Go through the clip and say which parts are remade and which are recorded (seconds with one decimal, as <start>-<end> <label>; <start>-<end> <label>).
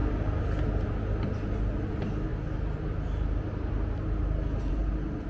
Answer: 0.0-5.3 recorded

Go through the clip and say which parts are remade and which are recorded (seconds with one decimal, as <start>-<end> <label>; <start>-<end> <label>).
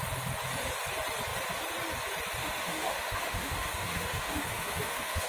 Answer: 0.0-2.4 recorded; 2.4-5.3 remade